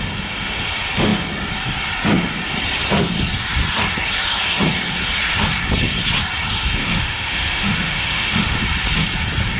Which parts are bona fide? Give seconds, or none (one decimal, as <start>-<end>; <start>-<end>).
0.0-6.8; 8.6-9.6